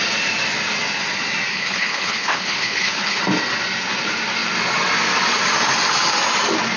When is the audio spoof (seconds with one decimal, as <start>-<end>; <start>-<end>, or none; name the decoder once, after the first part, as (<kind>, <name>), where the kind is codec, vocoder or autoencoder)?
1.5-3.2 (codec, HILCodec)